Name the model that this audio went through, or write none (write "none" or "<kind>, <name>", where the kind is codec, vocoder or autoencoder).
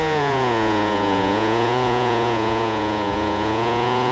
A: vocoder, Vocos